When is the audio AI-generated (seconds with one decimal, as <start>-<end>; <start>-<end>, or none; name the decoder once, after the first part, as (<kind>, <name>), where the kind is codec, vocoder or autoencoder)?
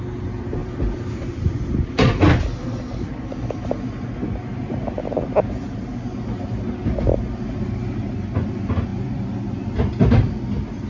0.6-2.1 (vocoder, BigVGAN v2); 8.9-9.5